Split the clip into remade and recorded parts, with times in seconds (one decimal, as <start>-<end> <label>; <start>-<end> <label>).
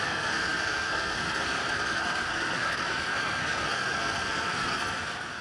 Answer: 0.0-5.4 remade